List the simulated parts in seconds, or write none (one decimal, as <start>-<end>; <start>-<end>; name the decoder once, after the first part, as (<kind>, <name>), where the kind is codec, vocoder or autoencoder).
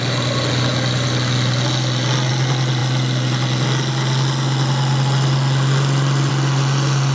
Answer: none